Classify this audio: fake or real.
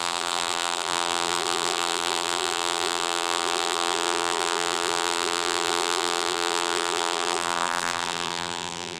fake